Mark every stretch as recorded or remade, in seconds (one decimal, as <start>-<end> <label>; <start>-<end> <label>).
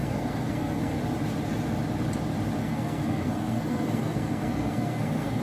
0.0-1.0 remade; 1.0-2.6 recorded; 2.6-5.4 remade